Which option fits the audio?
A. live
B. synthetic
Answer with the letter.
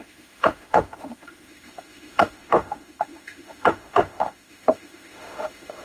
B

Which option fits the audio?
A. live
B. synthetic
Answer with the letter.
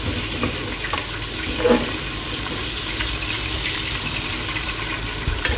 A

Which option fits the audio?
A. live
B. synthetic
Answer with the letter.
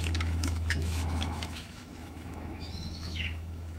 B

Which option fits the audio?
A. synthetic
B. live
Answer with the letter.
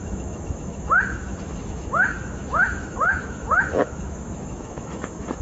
A